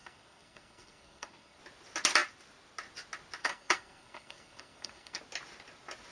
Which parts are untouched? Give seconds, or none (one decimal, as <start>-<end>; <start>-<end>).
1.6-3.4; 5.2-6.1